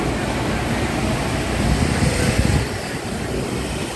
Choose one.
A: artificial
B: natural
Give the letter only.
B